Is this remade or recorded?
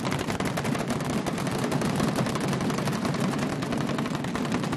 recorded